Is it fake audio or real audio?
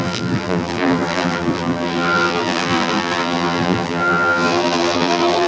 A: fake